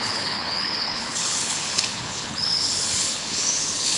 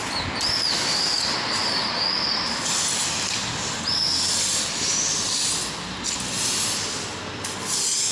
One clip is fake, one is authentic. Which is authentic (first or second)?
second